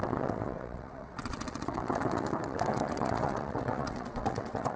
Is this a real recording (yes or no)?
no